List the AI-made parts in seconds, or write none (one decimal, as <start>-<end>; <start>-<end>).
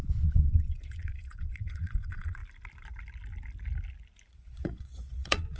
0.0-2.4; 4.3-5.6